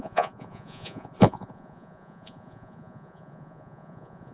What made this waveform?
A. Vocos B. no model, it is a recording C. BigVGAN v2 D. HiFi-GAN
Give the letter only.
A